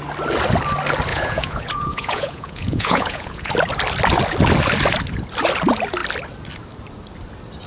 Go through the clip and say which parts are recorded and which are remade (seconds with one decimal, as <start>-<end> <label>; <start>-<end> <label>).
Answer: 0.0-1.1 recorded; 1.1-3.5 remade; 3.5-7.7 recorded